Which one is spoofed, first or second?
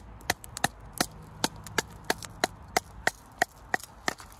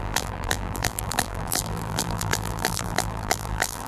second